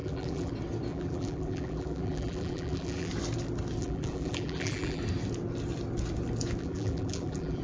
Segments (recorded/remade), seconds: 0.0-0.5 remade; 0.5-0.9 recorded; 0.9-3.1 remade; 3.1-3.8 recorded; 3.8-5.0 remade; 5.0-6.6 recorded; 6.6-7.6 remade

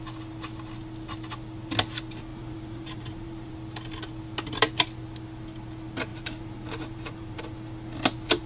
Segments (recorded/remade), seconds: 0.0-2.3 recorded; 2.3-3.5 remade; 3.5-6.1 recorded; 6.1-7.4 remade; 7.4-8.5 recorded

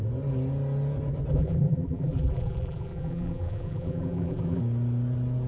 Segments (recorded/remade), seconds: 0.0-1.3 recorded; 1.3-4.6 remade; 4.6-5.5 recorded

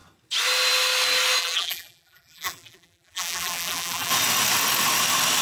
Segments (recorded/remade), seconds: 0.0-1.4 recorded; 1.4-4.1 remade; 4.1-5.4 recorded